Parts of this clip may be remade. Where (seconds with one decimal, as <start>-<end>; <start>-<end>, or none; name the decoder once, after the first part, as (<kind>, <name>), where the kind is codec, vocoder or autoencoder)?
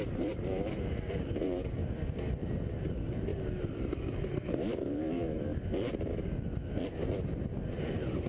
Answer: 0.0-1.8 (vocoder, BigVGAN v2); 2.8-5.5; 7.8-8.3